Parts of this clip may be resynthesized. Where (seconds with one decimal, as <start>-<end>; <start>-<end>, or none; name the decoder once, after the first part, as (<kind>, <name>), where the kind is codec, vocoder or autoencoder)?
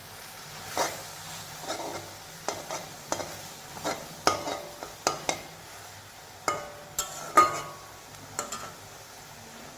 none